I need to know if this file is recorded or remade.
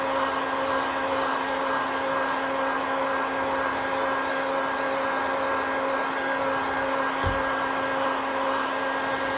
recorded